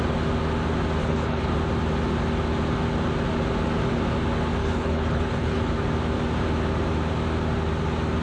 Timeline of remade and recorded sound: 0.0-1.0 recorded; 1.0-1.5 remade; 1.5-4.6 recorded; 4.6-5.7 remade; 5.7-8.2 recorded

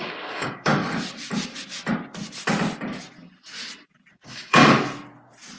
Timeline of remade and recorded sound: 0.0-0.7 remade; 0.7-4.1 recorded; 4.1-4.6 remade; 4.6-5.6 recorded

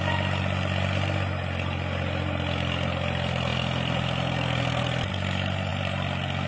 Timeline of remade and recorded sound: 0.0-6.5 recorded

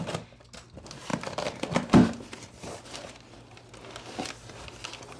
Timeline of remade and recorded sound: 0.0-5.2 recorded

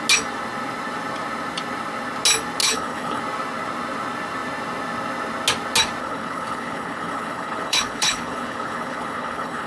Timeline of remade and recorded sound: 0.0-2.6 recorded; 2.6-3.2 remade; 3.2-6.0 recorded; 6.0-9.7 remade

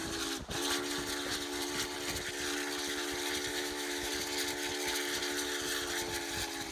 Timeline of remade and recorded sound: 0.0-3.5 recorded; 3.5-4.1 remade; 4.1-6.7 recorded

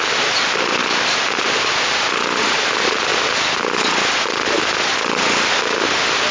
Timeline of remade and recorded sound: 0.0-6.3 recorded

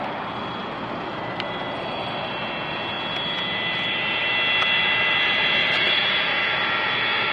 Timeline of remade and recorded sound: 0.0-5.6 recorded; 5.6-6.5 remade; 6.5-7.3 recorded